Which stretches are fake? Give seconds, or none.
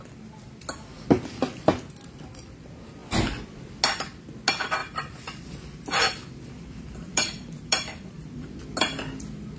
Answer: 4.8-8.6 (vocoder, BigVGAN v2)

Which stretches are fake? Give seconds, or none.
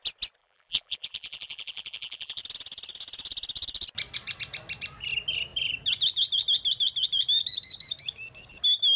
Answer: 0.4-2.4 (vocoder, BigVGAN v2)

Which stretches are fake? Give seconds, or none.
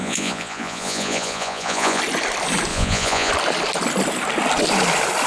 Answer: 0.0-2.0 (vocoder, Vocos); 2.7-3.3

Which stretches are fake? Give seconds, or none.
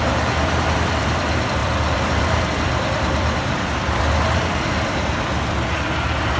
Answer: 1.6-4.0 (vocoder, BigVGAN v2)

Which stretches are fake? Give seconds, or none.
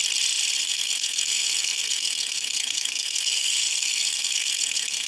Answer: 0.6-5.1 (codec, SNAC)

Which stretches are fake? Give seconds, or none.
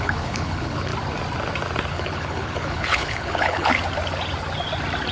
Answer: 0.0-0.9 (codec, HILCodec); 1.9-3.7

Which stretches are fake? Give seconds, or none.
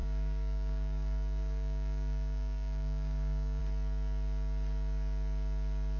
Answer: 0.0-3.6 (codec, DAC)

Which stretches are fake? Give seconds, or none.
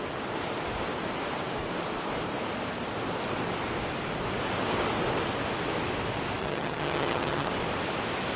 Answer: 6.4-7.5 (vocoder, HiFi-GAN)